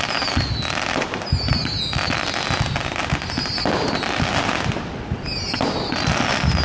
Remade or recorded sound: recorded